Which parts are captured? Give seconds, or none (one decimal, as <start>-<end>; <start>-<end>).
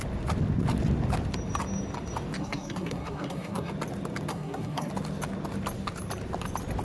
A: 0.0-2.4; 3.7-4.3; 4.9-6.8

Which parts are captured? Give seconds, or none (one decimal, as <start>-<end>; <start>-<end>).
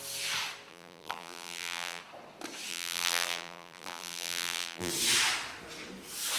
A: 0.0-0.7; 2.0-2.7; 4.9-6.4